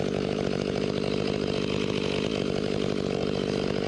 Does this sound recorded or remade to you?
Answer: remade